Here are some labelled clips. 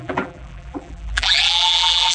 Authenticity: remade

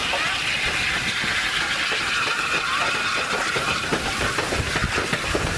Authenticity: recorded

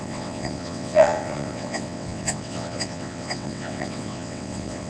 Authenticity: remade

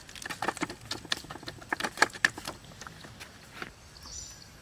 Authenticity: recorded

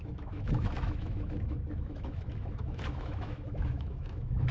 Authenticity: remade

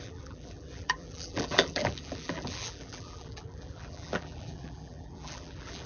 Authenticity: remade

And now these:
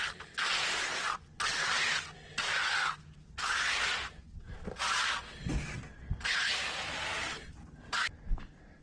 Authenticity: recorded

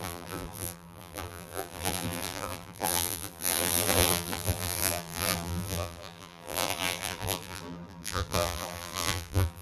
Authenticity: remade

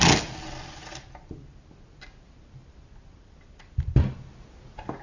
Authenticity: recorded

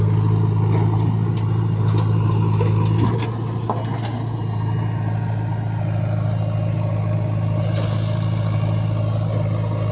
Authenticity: recorded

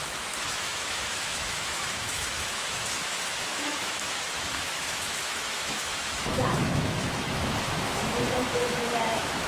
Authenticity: remade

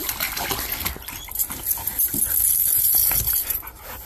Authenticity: recorded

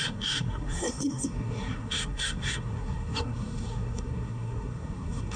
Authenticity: remade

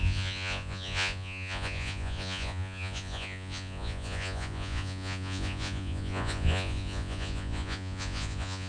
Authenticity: remade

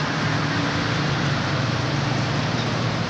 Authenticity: recorded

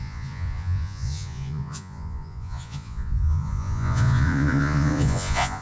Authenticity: remade